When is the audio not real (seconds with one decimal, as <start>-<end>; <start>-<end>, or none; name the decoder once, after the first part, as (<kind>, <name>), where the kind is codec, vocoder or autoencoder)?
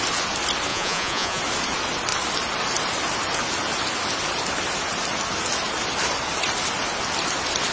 0.7-1.4 (vocoder, Vocos)